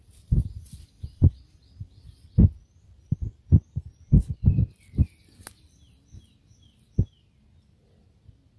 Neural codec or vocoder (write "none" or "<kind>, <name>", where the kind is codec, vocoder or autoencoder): none